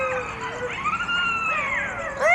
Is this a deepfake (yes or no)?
no